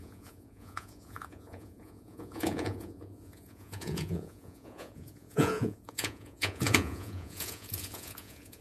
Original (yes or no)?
no